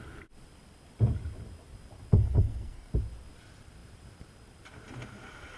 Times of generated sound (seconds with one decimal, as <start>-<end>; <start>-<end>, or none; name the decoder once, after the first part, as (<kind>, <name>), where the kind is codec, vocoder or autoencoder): 2.1-2.9 (codec, SNAC)